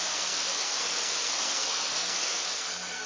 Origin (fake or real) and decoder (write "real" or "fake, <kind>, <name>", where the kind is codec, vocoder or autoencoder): fake, codec, SNAC